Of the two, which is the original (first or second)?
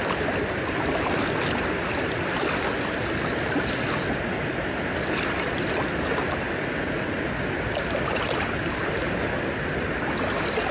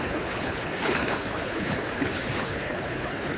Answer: first